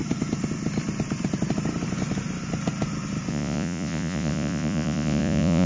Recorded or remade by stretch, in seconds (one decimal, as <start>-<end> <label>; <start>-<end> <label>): 0.0-3.3 recorded; 3.3-5.7 remade